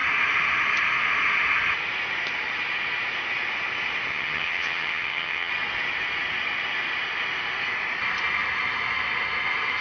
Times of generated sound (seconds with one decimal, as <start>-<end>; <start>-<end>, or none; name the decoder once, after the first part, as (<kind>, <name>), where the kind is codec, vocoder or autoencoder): 4.1-5.5 (vocoder, HiFi-GAN)

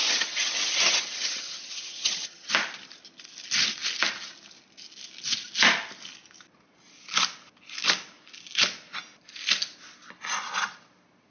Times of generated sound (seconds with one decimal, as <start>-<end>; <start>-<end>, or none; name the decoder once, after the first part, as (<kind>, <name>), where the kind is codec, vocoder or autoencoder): 0.0-2.5 (vocoder, HiFi-GAN)

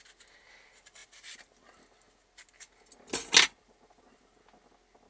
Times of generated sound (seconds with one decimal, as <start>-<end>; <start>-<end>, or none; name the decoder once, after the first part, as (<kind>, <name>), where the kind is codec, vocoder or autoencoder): none

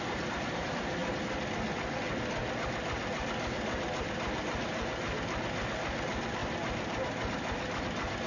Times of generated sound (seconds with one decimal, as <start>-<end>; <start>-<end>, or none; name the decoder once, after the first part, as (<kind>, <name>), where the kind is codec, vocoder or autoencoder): none

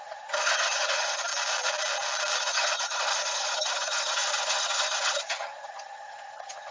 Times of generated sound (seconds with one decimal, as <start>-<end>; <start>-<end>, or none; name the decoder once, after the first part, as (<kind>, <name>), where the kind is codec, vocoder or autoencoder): 0.0-1.3 (vocoder, HiFi-GAN); 2.4-6.7

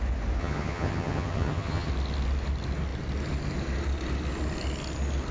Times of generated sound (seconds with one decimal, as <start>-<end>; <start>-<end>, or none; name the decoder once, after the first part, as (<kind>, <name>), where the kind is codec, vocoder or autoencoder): 0.4-1.9 (vocoder, HiFi-GAN)

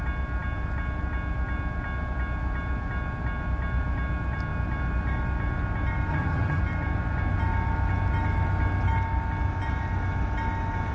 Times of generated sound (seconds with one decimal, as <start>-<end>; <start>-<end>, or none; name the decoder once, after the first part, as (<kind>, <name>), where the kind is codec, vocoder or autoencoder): 6.1-6.6 (vocoder, HiFi-GAN)

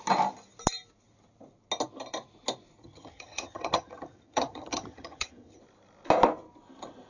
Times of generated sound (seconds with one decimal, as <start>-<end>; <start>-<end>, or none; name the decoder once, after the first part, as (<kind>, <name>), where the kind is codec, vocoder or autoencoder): 2.8-5.6 (vocoder, HiFi-GAN)